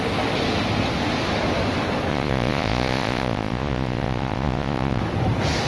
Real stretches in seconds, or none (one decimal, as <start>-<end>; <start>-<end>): 0.0-2.1; 5.0-5.7